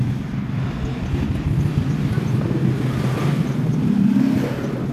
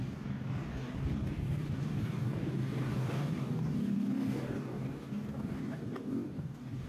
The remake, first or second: second